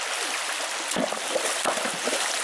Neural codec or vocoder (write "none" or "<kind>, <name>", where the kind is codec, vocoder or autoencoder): none